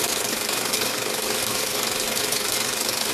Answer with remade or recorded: remade